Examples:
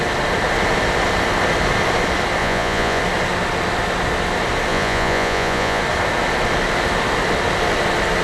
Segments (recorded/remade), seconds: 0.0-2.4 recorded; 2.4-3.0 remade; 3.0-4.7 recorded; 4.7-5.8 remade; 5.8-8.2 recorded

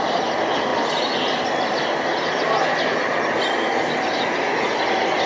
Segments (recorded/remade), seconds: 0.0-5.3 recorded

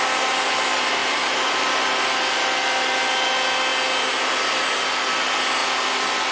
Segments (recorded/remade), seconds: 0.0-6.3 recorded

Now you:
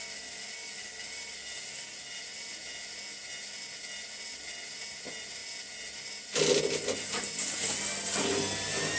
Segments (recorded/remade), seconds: 0.0-9.0 recorded

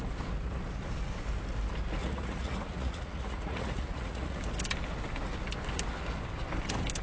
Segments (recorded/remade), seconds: 0.0-2.0 recorded; 2.0-4.4 remade; 4.4-7.0 recorded

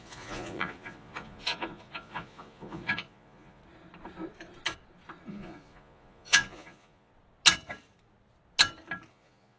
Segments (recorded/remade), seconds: 0.0-3.6 remade; 3.6-5.3 recorded; 5.3-7.1 remade; 7.1-9.1 recorded; 9.1-9.6 remade

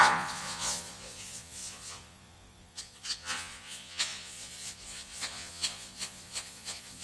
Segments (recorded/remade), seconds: 0.0-7.0 remade

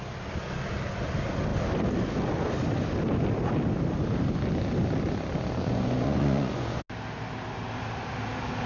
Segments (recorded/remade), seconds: 0.0-5.6 recorded; 5.6-6.8 remade; 6.8-8.7 recorded